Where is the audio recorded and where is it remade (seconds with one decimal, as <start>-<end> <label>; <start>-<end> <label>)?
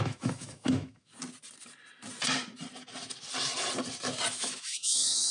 0.0-1.1 remade; 1.1-4.3 recorded; 4.3-5.3 remade